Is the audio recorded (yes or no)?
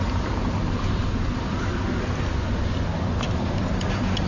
no